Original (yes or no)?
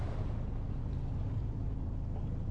yes